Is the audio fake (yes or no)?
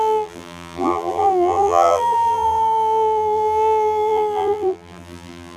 yes